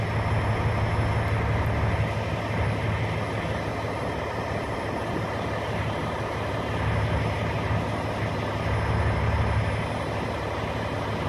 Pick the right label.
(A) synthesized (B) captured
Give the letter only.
B